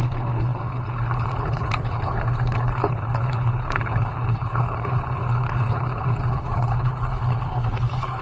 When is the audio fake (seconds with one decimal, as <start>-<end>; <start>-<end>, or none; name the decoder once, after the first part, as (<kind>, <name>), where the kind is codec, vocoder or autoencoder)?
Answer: 0.0-8.2 (codec, HILCodec)